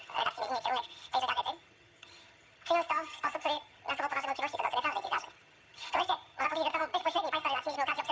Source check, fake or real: fake